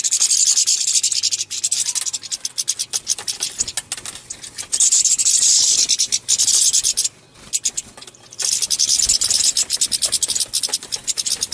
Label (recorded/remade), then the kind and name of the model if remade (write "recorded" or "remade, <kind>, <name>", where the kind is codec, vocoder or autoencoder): recorded